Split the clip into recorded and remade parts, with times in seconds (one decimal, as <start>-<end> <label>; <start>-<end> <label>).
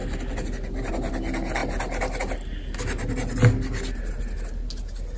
0.0-5.2 recorded